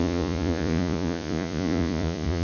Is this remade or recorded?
remade